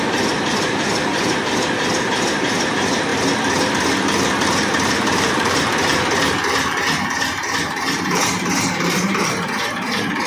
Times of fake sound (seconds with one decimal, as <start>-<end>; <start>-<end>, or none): 0.0-1.1; 1.9-3.1; 3.7-10.3